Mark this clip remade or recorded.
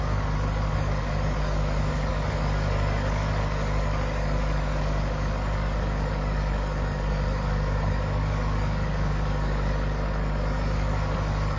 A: remade